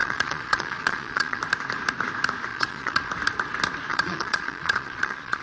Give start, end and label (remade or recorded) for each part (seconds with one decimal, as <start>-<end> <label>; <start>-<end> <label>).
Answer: 0.0-1.4 remade; 1.4-2.5 recorded; 2.5-3.1 remade; 3.1-3.9 recorded; 3.9-5.4 remade